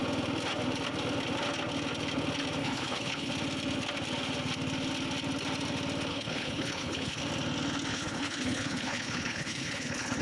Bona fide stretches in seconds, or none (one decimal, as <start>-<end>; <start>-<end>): 0.0-2.6; 3.3-6.1; 7.2-7.9